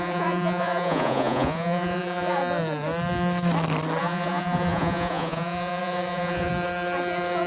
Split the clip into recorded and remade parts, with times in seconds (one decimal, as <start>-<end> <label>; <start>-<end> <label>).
0.0-2.4 remade; 2.4-4.0 recorded; 4.0-6.5 remade; 6.5-7.5 recorded